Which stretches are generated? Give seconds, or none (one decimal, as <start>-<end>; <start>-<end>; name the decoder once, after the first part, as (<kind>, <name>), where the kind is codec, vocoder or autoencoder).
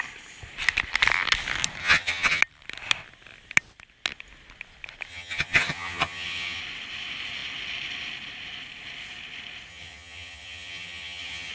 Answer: 1.8-2.4 (vocoder, HiFi-GAN); 5.1-6.6; 9.7-11.5